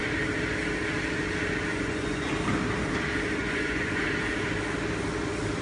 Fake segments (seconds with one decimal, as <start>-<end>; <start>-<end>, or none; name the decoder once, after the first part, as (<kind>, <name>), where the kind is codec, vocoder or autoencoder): 1.7-2.3 (vocoder, Vocos); 3.4-4.0